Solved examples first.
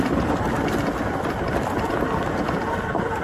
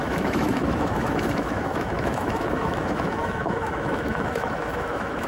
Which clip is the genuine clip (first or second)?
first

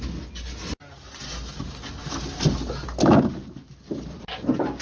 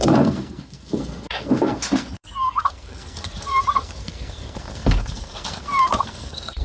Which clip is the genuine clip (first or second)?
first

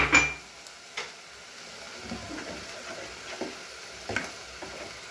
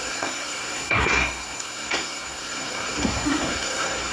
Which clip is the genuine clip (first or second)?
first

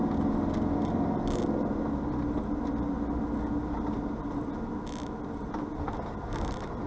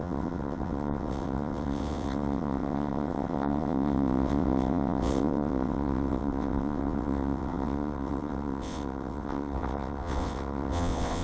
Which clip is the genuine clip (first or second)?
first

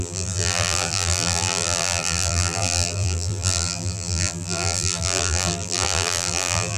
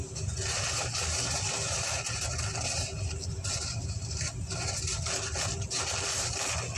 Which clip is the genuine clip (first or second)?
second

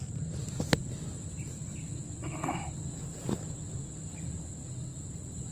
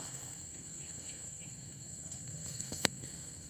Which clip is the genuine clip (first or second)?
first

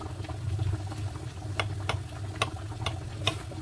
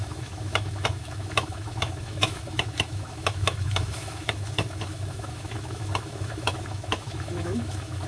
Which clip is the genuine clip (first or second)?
first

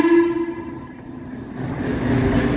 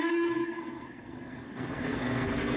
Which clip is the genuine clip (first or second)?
first